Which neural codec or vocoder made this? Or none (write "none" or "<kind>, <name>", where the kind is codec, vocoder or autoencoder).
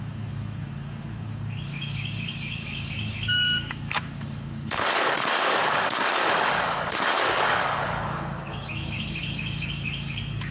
codec, DAC